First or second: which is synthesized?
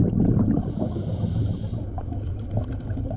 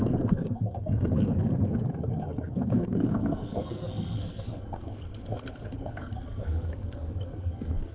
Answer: second